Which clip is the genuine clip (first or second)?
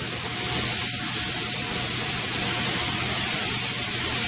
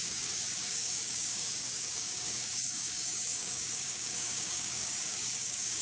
first